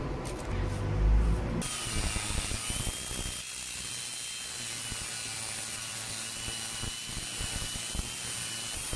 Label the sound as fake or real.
real